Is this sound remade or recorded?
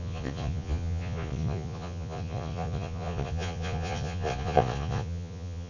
remade